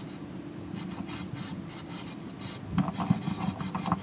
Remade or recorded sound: recorded